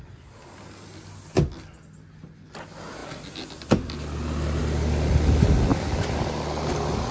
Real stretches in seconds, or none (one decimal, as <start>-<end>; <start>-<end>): 0.0-7.1